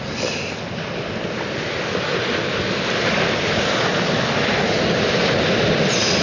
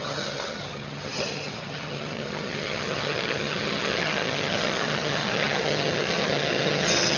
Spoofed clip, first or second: second